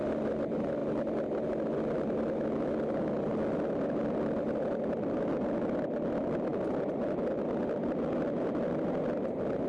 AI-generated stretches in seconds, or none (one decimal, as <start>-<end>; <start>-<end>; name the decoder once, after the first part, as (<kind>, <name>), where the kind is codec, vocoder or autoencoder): none